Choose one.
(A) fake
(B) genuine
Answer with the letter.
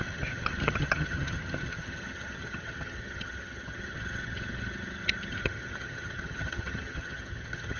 A